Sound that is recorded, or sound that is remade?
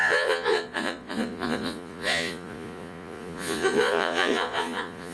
remade